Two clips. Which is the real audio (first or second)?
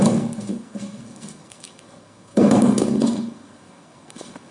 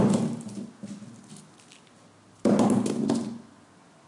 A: second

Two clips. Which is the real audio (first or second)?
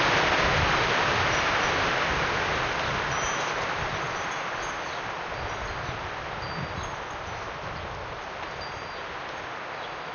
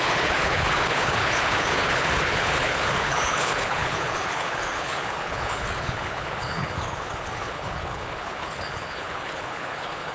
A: first